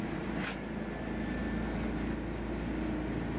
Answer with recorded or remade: recorded